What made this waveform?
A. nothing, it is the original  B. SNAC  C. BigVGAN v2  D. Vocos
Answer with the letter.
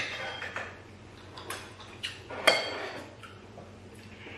D